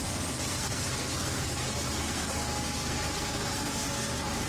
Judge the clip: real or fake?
fake